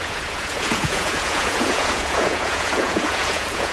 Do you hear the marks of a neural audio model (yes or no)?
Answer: yes